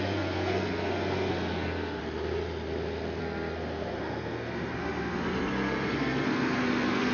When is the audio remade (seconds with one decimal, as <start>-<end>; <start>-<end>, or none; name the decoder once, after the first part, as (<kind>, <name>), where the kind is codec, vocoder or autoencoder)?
0.0-2.0 (codec, SNAC); 3.2-7.1